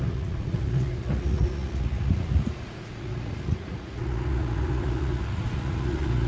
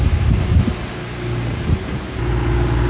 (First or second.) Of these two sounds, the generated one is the first